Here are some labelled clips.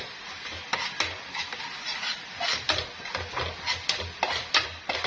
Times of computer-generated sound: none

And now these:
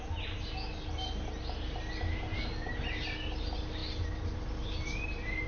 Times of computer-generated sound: none

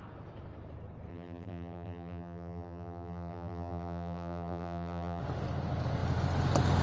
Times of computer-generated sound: 1.1-5.2 (vocoder, BigVGAN v2)

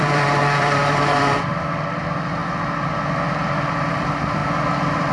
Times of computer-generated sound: 0.0-2.4 (vocoder, BigVGAN v2); 3.0-4.4